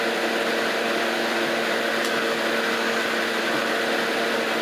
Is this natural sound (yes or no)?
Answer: yes